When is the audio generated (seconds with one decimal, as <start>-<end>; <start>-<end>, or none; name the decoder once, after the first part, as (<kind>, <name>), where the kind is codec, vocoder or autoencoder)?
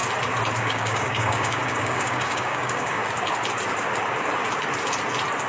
0.6-3.0 (codec, DAC)